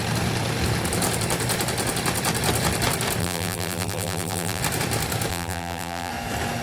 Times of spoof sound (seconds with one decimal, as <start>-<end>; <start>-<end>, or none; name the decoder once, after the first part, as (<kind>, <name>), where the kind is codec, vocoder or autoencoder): 3.2-4.6 (vocoder, BigVGAN v2); 5.3-6.1